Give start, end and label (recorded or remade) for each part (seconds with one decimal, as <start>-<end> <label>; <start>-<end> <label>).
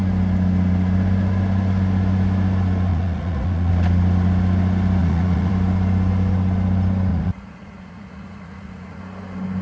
0.0-2.9 recorded; 2.9-3.7 remade; 3.7-5.0 recorded; 5.0-5.5 remade; 5.5-7.1 recorded; 7.1-9.0 remade; 9.0-9.6 recorded